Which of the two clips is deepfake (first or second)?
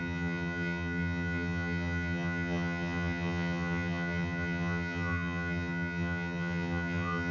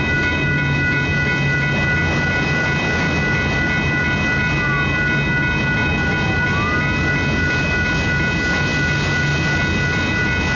first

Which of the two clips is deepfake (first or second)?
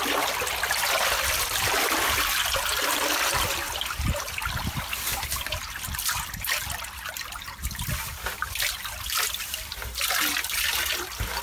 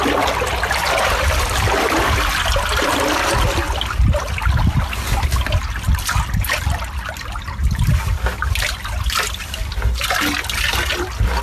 first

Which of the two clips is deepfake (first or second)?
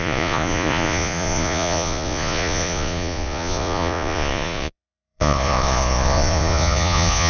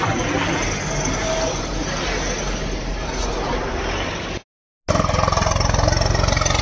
first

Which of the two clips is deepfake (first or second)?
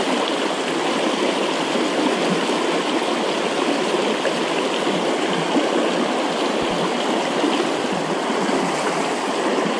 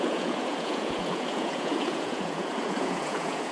second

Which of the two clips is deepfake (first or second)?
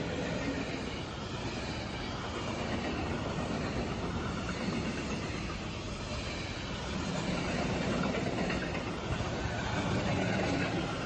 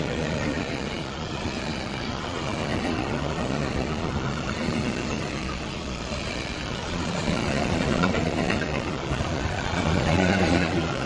second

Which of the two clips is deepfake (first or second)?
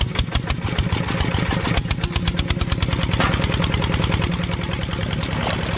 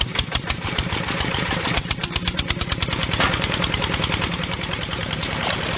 second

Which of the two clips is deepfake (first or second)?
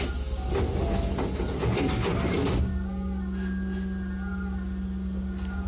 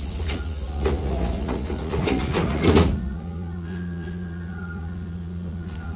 second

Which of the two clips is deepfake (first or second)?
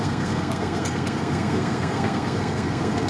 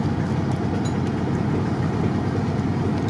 first